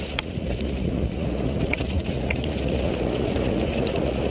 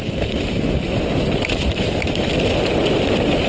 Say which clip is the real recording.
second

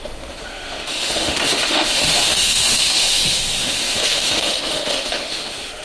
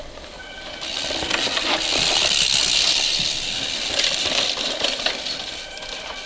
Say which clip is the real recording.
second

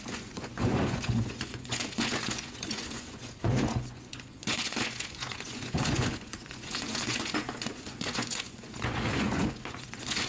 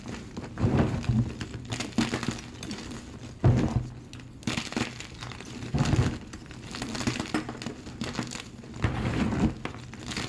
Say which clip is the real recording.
second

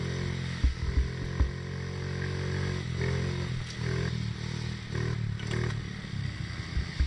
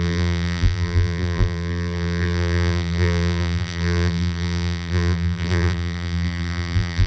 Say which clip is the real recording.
first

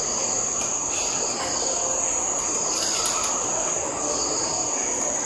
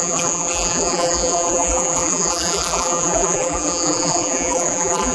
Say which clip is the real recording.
first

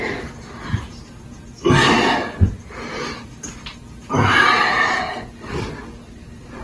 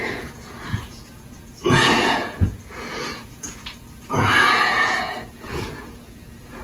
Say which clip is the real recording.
first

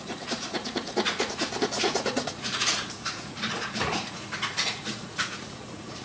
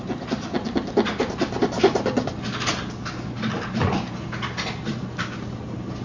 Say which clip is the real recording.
second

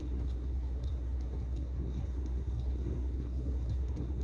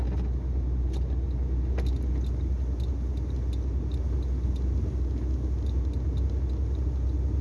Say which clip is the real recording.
second